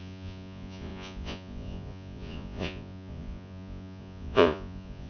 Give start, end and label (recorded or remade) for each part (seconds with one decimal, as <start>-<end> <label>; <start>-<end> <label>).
0.0-5.1 remade